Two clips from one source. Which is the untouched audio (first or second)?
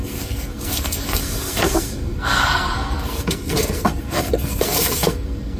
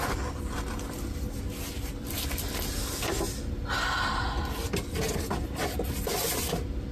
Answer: second